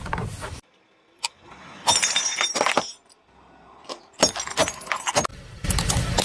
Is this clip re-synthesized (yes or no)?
no